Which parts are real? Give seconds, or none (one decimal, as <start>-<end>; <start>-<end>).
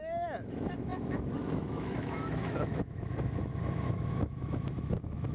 none